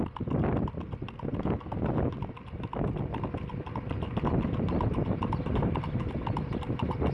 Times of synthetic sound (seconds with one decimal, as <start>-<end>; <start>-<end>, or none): none